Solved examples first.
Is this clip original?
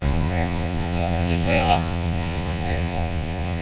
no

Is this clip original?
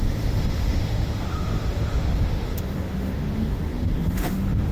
no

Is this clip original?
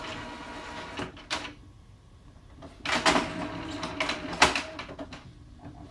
yes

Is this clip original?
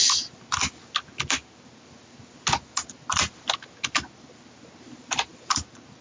yes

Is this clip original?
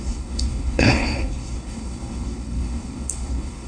no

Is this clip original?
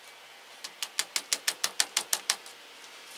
yes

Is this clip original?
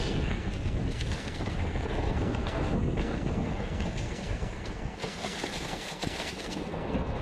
no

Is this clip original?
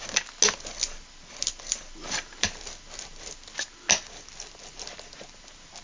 yes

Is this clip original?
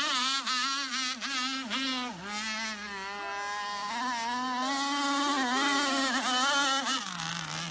yes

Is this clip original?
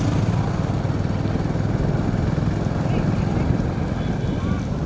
yes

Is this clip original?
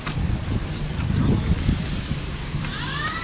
no